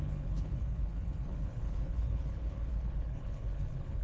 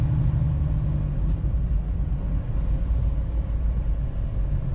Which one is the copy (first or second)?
first